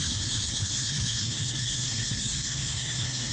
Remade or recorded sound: remade